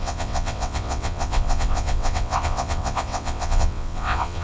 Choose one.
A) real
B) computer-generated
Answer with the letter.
B